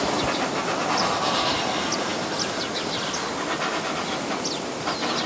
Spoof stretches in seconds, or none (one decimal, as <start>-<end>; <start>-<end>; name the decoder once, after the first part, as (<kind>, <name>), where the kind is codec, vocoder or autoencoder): none